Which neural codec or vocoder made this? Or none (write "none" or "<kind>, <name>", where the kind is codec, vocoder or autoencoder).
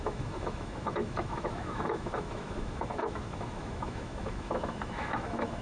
autoencoder, DAC-VAE